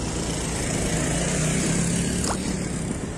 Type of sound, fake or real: real